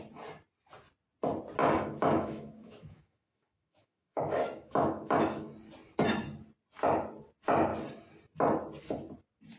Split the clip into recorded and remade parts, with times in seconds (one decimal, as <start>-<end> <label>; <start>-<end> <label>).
0.0-1.6 recorded; 1.6-5.5 remade; 5.5-9.6 recorded